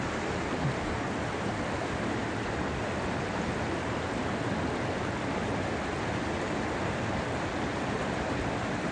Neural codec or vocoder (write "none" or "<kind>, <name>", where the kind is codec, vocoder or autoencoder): none